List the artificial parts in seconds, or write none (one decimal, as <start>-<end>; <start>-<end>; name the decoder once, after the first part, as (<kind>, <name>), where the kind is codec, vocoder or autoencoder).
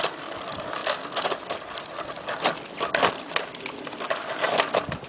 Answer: none